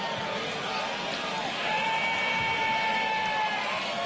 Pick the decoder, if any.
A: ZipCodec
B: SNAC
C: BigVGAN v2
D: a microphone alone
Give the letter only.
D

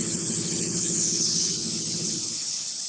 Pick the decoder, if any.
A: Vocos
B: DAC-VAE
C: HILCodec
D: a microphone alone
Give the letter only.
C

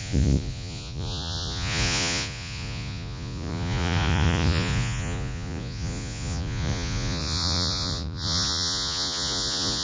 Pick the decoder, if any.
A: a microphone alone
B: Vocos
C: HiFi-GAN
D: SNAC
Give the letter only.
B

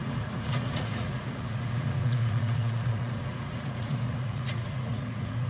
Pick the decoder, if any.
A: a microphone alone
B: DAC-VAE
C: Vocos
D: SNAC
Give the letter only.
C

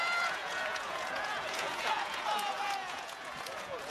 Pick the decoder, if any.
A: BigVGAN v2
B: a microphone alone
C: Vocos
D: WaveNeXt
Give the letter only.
C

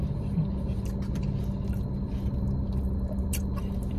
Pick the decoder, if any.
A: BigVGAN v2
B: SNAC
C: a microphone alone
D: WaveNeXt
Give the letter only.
C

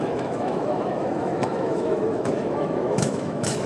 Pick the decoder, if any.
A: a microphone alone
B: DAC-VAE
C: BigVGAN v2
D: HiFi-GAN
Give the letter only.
B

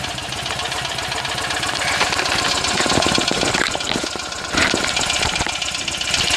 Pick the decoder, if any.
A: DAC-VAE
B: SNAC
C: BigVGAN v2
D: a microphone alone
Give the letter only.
D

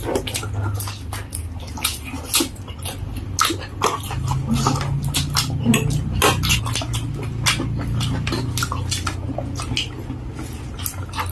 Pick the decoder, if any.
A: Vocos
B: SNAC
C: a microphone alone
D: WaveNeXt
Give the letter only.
C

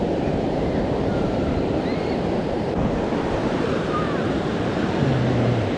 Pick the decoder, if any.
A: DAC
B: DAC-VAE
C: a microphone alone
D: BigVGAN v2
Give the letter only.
D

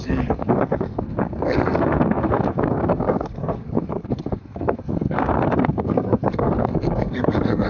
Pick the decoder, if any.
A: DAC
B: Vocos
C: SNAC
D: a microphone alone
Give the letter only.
C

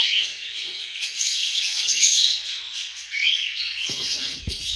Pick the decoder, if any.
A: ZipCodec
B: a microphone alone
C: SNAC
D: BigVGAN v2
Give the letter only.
C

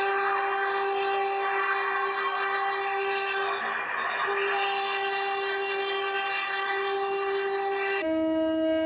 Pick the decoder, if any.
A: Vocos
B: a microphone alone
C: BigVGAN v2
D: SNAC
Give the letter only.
B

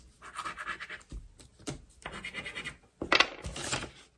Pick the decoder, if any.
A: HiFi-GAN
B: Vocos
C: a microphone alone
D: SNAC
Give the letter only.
C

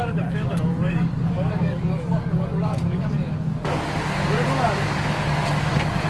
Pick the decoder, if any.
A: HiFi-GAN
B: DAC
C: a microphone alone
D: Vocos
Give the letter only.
B